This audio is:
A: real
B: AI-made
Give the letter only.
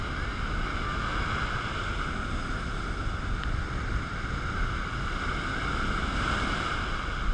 A